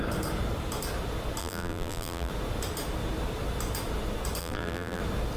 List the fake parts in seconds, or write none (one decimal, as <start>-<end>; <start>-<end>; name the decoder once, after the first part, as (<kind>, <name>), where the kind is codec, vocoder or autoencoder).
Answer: 1.4-2.3 (vocoder, BigVGAN v2); 4.4-5.0

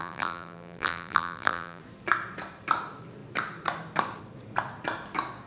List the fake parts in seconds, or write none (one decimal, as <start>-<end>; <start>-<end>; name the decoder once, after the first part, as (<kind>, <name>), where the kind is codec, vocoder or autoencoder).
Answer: 0.0-1.8 (vocoder, BigVGAN v2)

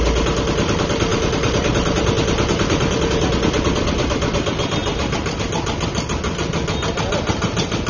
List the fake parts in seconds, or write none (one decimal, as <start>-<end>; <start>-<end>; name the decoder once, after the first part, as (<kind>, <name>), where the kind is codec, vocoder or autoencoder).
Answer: 4.8-5.4 (vocoder, BigVGAN v2)

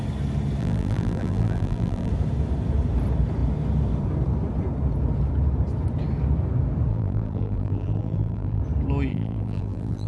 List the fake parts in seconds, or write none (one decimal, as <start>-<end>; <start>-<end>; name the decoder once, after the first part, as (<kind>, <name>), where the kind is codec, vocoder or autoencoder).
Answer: 0.6-2.1 (vocoder, BigVGAN v2); 6.9-8.6; 9.1-10.1